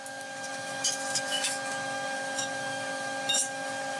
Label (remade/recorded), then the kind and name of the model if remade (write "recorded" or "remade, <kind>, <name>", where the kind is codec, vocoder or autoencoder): remade, autoencoder, DAC-VAE